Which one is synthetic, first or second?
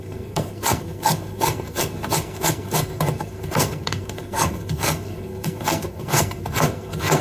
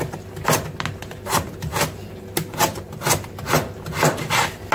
first